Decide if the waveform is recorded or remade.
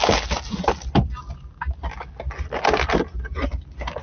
recorded